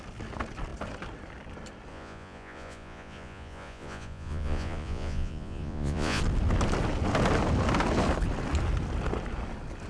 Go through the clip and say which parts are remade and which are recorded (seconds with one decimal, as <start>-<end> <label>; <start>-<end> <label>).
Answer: 0.0-1.9 recorded; 1.9-6.2 remade; 6.2-9.9 recorded